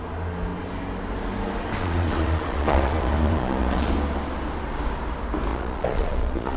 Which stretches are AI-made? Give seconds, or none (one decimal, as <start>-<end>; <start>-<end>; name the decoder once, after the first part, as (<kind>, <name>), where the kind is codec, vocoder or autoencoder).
1.8-3.9 (vocoder, Vocos); 5.5-6.6